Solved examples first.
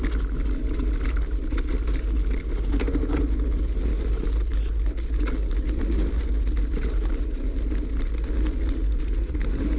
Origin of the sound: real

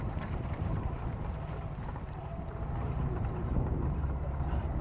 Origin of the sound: fake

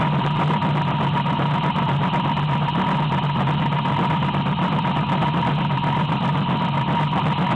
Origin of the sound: real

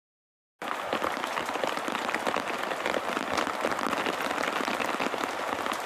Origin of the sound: real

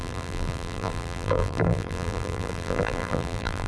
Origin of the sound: fake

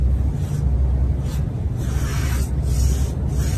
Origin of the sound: real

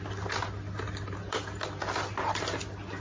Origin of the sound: real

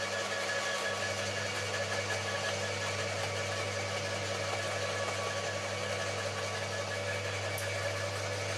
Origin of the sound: real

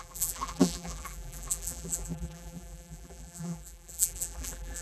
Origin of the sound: fake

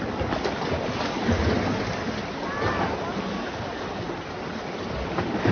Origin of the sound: real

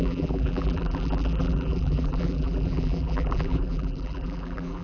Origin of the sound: fake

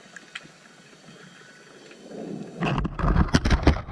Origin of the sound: real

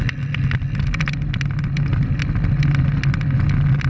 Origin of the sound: real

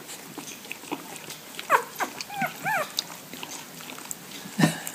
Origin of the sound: real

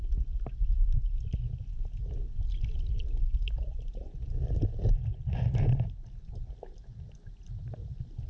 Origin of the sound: real